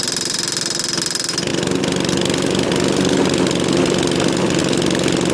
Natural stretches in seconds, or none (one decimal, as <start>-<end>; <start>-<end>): 0.0-5.3